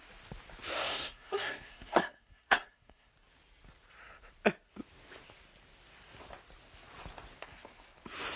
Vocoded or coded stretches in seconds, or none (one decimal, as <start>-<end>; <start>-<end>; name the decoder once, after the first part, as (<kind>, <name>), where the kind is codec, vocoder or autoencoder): 0.8-3.1 (codec, SNAC)